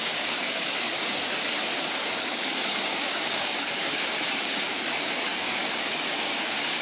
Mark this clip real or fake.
fake